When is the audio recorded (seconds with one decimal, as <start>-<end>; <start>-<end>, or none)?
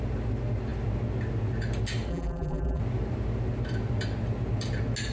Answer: 0.0-2.1; 2.8-5.1